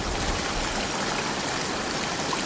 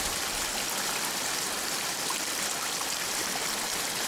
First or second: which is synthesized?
first